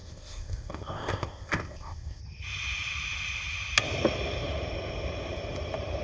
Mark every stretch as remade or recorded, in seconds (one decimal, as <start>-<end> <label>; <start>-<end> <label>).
0.0-2.2 remade; 2.2-6.0 recorded